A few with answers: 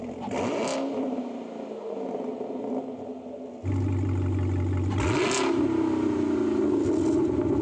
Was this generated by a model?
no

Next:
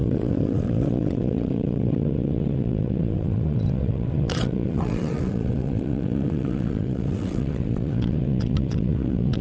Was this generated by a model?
yes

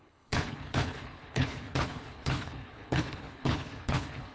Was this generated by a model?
yes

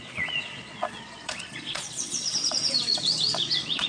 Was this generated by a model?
yes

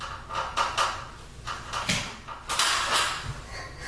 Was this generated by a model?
no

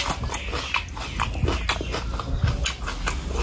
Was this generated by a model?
no